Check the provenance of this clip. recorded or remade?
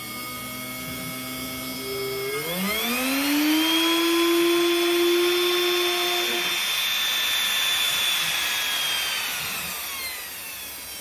recorded